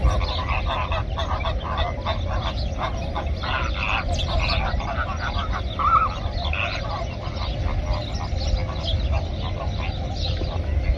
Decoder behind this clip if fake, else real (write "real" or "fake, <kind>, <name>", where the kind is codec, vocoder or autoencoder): real